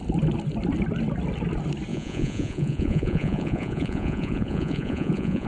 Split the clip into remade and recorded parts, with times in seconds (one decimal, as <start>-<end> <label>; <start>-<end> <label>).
0.0-1.9 recorded; 1.9-5.5 remade